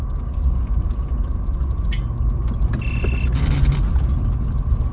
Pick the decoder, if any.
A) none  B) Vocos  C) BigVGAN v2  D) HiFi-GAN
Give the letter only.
A